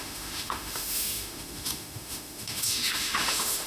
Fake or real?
fake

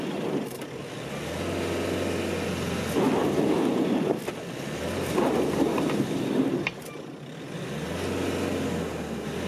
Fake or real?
real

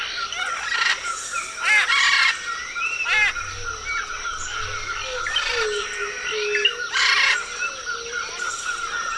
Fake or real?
real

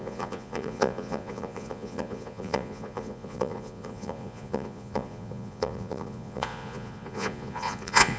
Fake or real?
fake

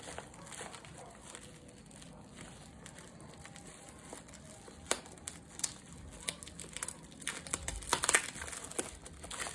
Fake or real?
real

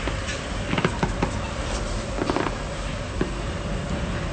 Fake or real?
real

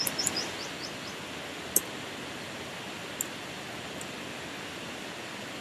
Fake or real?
real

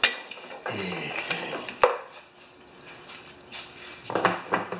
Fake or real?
real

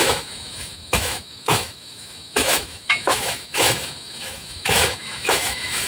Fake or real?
fake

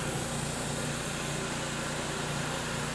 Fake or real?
real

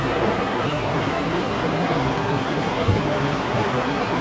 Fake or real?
fake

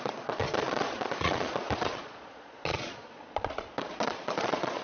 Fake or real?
fake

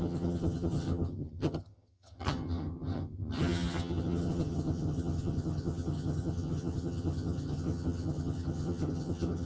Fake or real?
fake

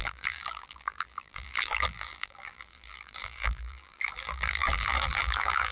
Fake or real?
fake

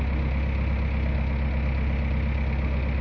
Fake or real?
real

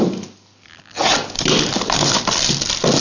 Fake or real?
fake